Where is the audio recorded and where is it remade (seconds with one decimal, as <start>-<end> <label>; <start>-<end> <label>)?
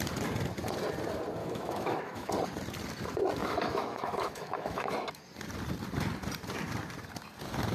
0.0-1.4 recorded; 1.4-2.3 remade; 2.3-3.4 recorded; 3.4-4.9 remade; 4.9-7.7 recorded